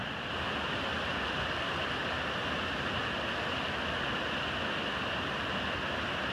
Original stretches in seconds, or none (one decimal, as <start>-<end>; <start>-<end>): 0.0-6.3